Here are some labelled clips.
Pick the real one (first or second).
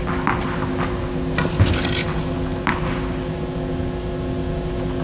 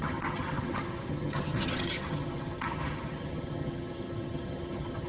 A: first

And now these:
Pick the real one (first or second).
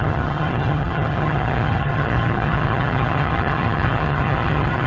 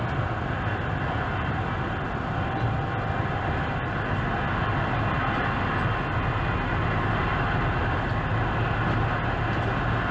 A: second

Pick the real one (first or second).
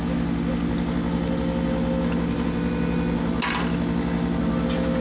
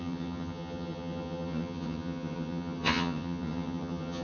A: first